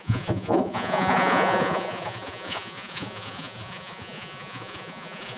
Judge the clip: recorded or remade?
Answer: remade